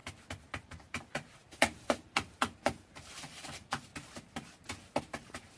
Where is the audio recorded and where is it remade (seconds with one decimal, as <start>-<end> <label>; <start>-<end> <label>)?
0.0-0.6 recorded; 0.6-3.9 remade; 3.9-5.0 recorded; 5.0-5.6 remade